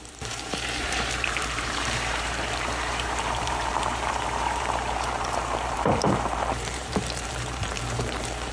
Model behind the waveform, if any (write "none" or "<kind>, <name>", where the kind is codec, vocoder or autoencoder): vocoder, BigVGAN v2